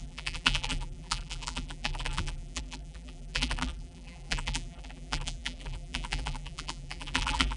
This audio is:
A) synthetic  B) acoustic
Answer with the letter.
A